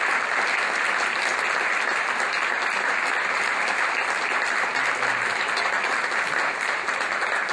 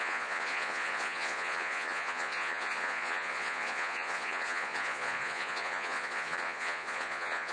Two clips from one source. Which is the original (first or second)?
first